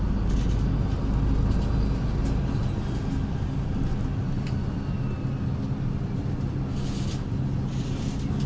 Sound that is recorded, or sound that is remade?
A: recorded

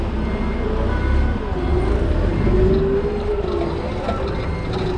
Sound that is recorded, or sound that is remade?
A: recorded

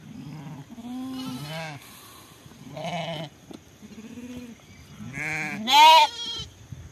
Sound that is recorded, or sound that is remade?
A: recorded